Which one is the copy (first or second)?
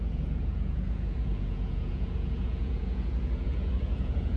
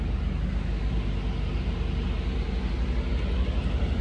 first